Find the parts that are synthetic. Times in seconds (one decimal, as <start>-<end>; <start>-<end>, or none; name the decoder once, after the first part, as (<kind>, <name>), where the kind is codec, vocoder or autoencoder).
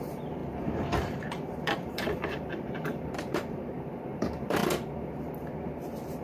0.0-4.6 (vocoder, BigVGAN v2)